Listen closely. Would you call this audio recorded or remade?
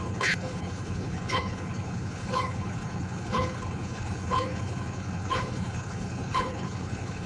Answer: remade